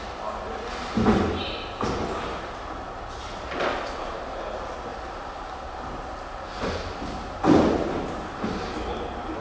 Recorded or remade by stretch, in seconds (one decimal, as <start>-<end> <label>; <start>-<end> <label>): 0.0-9.4 recorded